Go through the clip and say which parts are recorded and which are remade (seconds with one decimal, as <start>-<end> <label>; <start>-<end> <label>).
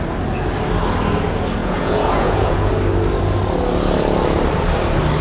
0.0-1.6 recorded; 1.6-2.7 remade; 2.7-5.2 recorded